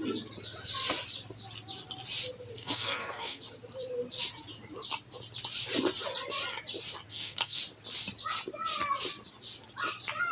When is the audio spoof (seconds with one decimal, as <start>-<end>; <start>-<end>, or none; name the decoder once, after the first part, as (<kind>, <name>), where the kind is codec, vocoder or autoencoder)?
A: 2.6-3.4 (codec, SNAC); 7.1-7.6